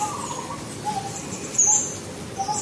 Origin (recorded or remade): recorded